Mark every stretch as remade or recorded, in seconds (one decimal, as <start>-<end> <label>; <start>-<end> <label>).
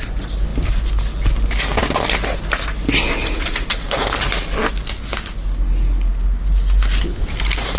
0.0-7.8 recorded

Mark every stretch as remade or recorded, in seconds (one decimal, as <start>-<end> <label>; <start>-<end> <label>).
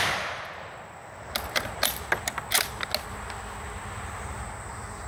0.0-5.1 recorded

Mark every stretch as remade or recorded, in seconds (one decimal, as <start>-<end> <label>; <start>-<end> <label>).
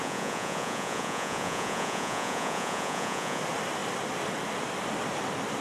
0.0-3.4 remade; 3.4-5.6 recorded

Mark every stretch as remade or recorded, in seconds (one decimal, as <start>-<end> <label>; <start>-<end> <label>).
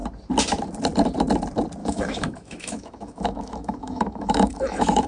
0.0-1.8 recorded; 1.8-5.1 remade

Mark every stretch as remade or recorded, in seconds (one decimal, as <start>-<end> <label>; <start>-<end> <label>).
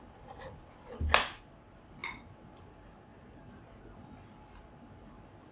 0.0-5.5 recorded